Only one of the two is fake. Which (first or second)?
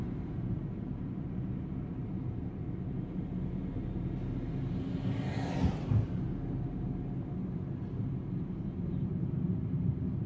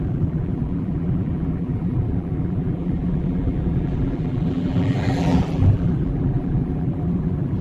second